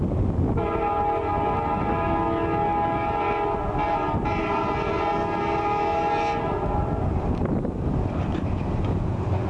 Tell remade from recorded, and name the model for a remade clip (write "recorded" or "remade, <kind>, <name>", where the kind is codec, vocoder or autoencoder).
recorded